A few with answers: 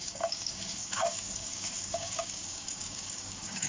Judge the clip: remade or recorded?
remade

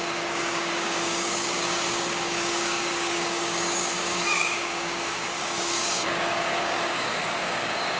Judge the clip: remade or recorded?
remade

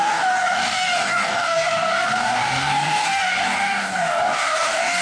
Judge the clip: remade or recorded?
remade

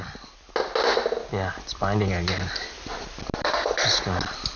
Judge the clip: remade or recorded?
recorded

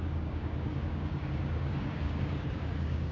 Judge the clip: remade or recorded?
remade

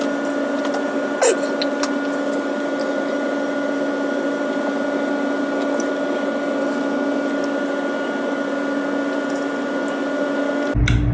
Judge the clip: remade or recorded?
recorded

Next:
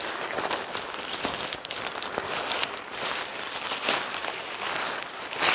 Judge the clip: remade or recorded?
recorded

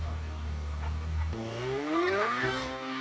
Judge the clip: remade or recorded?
remade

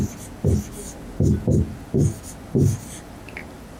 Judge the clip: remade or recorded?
recorded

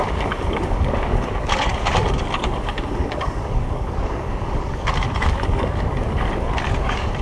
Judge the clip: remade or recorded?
remade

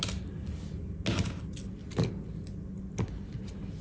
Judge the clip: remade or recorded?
recorded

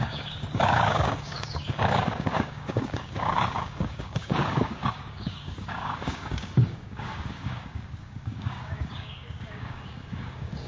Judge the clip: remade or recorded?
remade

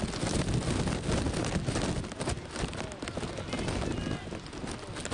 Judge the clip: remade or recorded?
recorded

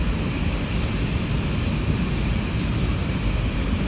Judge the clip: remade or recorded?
recorded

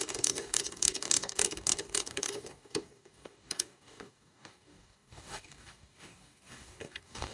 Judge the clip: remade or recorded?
remade